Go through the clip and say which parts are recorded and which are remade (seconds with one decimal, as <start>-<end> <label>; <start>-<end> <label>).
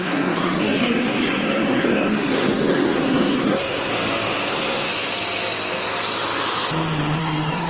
0.0-3.9 remade; 3.9-4.5 recorded; 4.5-4.9 remade; 4.9-7.2 recorded; 7.2-7.7 remade